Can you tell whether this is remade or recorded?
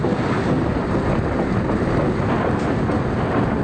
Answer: recorded